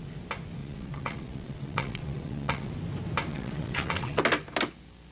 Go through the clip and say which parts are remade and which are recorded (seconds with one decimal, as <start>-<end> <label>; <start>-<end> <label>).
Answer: 0.0-0.6 recorded; 0.6-2.7 remade; 2.7-3.3 recorded; 3.3-4.2 remade; 4.2-5.1 recorded